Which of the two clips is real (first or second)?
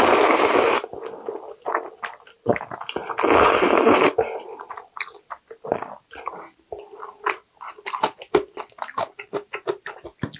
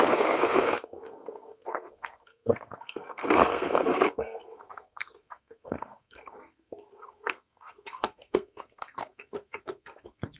first